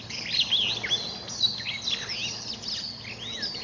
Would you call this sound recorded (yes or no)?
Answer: yes